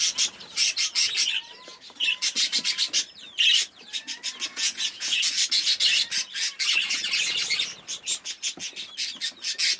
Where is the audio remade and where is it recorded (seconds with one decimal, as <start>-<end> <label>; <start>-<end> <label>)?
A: 0.0-4.5 recorded; 4.5-5.2 remade; 5.2-9.8 recorded